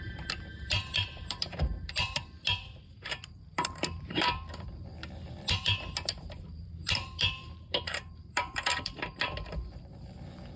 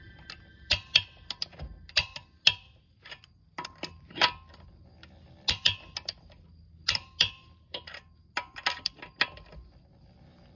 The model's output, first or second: first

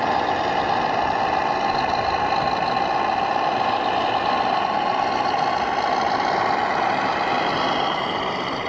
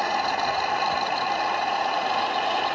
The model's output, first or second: second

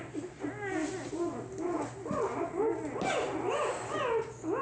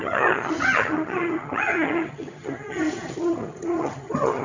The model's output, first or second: second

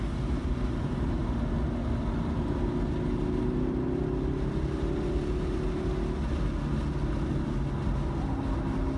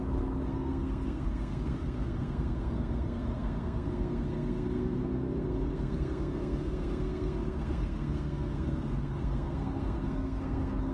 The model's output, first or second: second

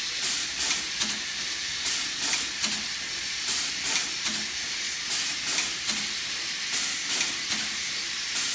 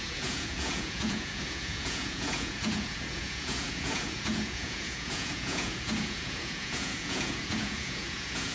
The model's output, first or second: second